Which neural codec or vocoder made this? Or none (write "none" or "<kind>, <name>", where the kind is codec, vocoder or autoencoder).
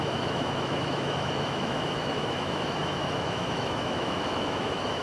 autoencoder, DAC-VAE